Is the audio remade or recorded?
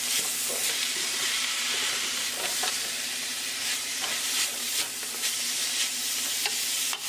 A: remade